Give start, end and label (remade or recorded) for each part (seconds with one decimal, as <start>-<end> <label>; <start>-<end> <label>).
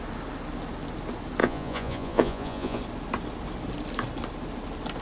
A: 0.0-1.4 recorded; 1.4-2.8 remade; 2.8-5.0 recorded